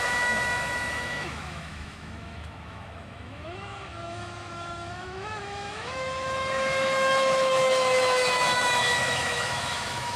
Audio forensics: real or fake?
fake